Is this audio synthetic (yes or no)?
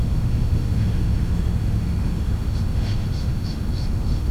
yes